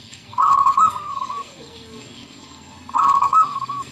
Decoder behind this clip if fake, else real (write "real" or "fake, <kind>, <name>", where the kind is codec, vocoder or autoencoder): fake, codec, SNAC